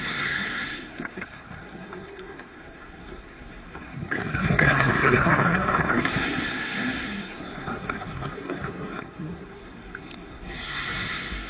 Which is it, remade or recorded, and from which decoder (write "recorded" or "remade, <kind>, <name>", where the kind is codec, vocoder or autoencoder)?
remade, codec, SNAC